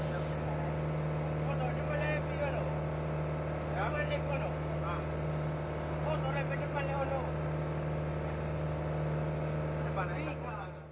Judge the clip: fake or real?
real